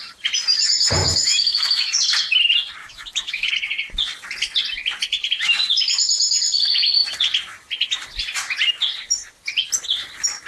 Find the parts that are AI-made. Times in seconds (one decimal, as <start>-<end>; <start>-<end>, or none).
1.0-1.9; 2.8-3.5